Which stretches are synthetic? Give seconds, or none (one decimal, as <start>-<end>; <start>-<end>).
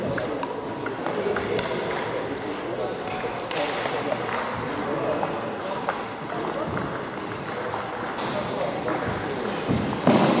none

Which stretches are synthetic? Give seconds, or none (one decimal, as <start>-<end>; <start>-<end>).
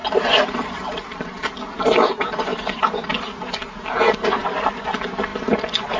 0.0-1.2; 2.5-3.1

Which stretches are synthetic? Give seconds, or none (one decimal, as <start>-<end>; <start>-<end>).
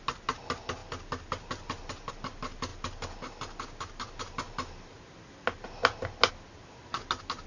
none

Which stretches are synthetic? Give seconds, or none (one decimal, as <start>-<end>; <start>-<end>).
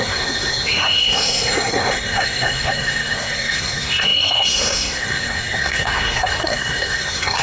0.0-7.4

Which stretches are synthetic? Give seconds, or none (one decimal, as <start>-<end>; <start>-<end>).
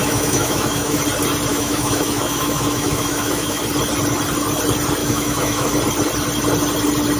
0.0-1.0; 1.5-3.6; 5.0-5.7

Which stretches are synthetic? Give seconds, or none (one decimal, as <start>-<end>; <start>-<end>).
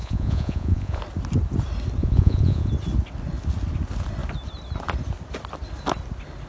0.0-1.0; 2.0-2.7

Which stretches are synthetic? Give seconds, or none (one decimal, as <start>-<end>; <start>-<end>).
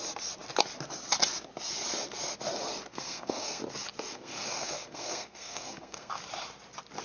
2.9-3.6; 4.1-6.2